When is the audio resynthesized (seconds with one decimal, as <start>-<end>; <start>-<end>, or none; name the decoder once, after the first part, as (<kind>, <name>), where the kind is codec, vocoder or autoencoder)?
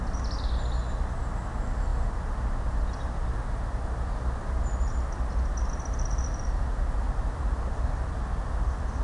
none